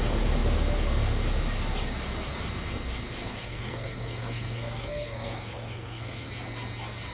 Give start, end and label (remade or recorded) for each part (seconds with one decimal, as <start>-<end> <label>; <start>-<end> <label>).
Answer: 0.0-3.2 recorded; 3.2-6.3 remade; 6.3-7.1 recorded